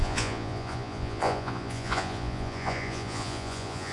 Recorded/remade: remade